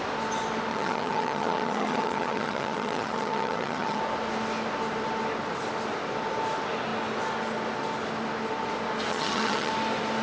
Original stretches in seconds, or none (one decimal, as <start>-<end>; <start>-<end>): 0.0-0.7; 4.0-9.1; 9.7-10.2